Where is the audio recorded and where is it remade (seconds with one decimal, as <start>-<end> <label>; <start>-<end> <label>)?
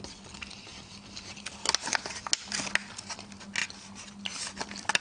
0.0-5.0 recorded